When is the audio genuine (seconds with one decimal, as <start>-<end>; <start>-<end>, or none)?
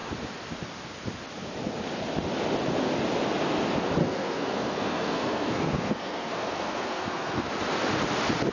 0.0-4.0; 7.5-8.5